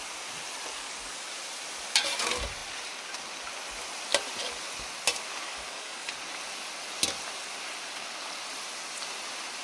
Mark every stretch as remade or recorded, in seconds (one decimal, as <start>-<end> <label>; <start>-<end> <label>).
0.0-0.7 recorded; 0.7-1.3 remade; 1.3-5.4 recorded; 5.4-6.1 remade; 6.1-9.6 recorded